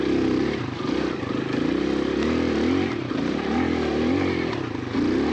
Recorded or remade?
recorded